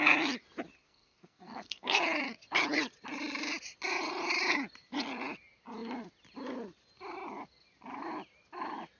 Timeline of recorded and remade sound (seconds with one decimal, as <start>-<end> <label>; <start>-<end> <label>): 0.0-0.8 recorded; 0.8-2.0 remade; 2.0-9.0 recorded